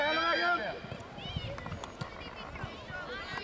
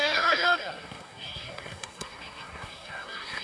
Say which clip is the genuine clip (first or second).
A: first